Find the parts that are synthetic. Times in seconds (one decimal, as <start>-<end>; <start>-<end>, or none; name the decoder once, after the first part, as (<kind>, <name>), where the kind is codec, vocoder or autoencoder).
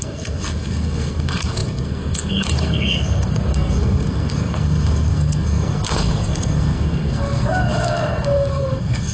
0.0-9.1 (codec, SNAC)